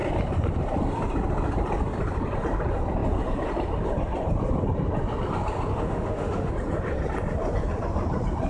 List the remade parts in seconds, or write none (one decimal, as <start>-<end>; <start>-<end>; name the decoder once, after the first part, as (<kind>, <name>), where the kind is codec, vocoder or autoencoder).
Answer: 5.7-6.5 (autoencoder, DAC-VAE)